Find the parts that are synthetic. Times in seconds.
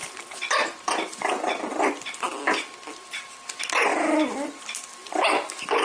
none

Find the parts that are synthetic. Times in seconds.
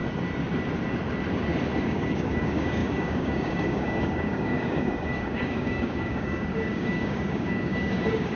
1.8-8.4 (codec, DAC)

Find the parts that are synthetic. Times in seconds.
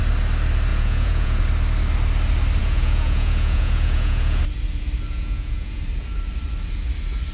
0.7-1.4 (vocoder, Vocos); 2.6-4.4; 5.1-5.8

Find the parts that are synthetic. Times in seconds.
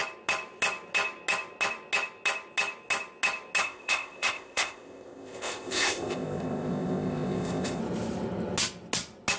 3.6-7.8 (codec, ZipCodec)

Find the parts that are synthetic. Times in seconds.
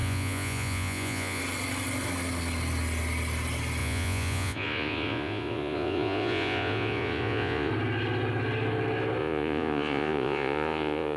0.0-1.4 (vocoder, Vocos); 3.8-7.7; 9.2-11.2